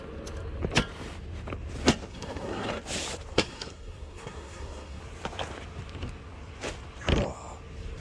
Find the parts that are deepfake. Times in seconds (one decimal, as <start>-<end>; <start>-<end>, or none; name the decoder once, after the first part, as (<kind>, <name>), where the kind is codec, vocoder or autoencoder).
2.1-2.7 (codec, SNAC); 3.3-5.0